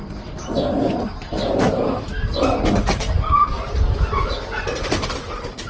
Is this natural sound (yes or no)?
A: no